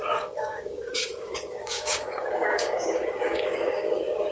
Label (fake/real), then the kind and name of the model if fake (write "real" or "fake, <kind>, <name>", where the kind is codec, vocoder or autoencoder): fake, codec, DAC